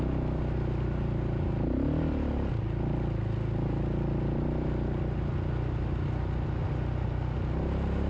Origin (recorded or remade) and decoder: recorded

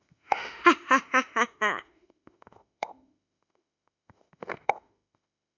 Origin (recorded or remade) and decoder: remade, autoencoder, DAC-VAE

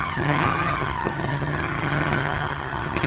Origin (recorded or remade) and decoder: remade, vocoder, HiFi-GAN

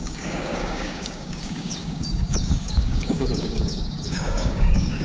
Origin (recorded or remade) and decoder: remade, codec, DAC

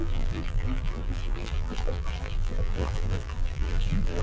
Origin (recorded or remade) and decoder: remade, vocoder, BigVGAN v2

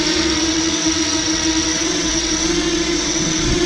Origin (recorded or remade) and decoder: remade, vocoder, WaveNeXt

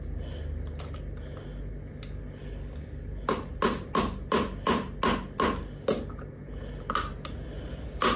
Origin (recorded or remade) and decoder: recorded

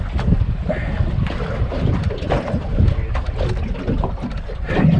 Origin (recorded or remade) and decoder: recorded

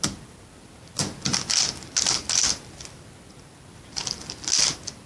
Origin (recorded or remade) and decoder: recorded